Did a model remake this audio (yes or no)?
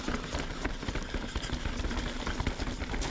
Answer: no